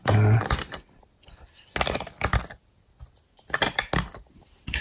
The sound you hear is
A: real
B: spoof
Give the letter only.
A